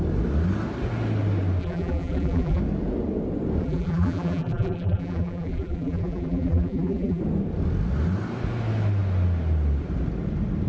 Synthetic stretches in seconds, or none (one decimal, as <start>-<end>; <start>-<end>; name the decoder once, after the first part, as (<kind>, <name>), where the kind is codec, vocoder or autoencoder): 1.6-2.6 (vocoder, BigVGAN v2); 3.6-7.2